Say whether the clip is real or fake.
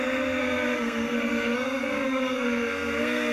fake